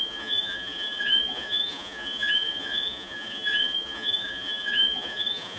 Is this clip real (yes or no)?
no